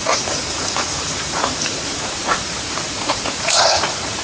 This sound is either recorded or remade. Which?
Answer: remade